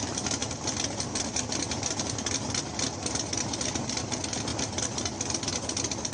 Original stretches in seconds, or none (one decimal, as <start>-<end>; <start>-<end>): 0.0-6.1